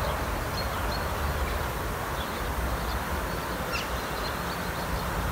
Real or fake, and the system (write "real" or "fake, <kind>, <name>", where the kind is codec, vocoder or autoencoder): real